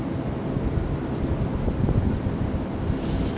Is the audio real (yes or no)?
yes